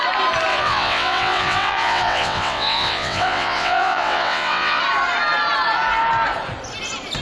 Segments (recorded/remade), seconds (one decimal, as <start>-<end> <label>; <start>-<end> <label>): 0.0-0.5 recorded; 0.5-4.8 remade; 4.8-7.2 recorded